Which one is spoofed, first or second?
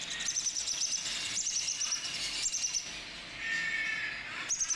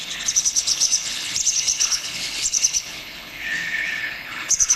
second